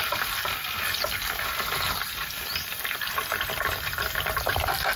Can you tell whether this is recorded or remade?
recorded